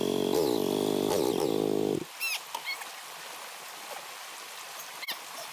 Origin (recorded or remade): recorded